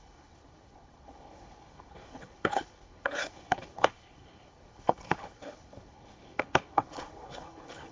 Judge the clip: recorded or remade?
remade